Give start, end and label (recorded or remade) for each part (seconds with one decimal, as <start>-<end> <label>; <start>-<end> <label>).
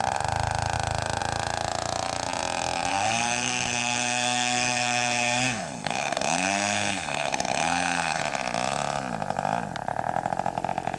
0.0-2.9 recorded; 2.9-8.2 remade; 8.2-11.0 recorded